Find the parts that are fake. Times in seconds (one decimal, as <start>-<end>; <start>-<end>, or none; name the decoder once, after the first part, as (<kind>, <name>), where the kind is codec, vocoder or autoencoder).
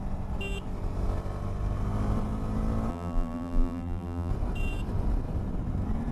2.9-4.3 (vocoder, BigVGAN v2)